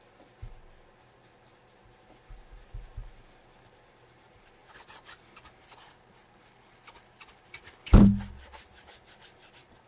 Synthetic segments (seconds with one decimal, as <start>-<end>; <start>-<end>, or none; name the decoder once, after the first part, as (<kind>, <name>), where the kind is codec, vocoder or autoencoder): none